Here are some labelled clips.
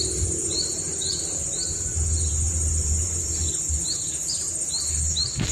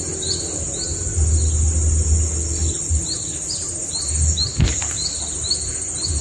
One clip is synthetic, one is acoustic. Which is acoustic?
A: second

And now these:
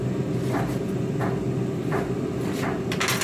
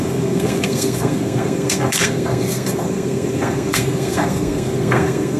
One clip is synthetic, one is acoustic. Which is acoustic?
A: first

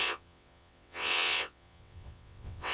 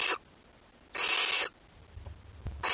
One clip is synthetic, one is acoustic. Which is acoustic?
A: second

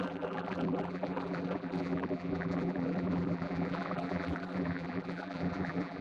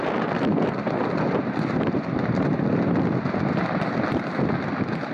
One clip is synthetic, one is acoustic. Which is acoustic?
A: second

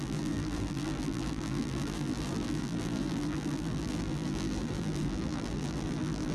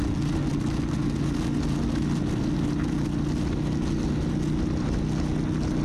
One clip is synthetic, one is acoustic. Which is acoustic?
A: second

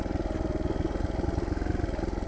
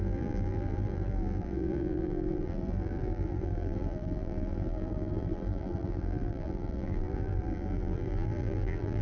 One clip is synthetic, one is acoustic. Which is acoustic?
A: first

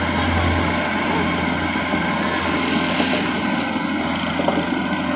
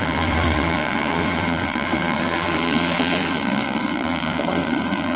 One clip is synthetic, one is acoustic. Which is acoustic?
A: first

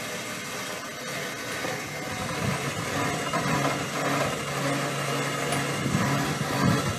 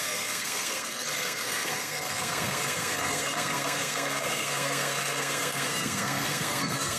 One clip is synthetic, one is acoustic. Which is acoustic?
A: first